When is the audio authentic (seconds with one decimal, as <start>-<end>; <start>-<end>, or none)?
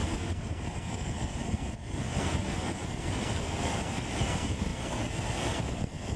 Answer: none